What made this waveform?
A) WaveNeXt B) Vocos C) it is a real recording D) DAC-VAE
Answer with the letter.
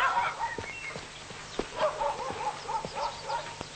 C